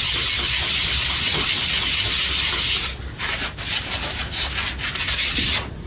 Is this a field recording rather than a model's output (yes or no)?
yes